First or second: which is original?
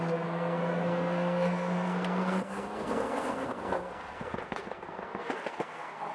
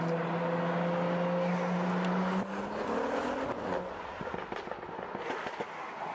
second